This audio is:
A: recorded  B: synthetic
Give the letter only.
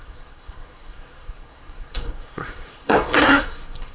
B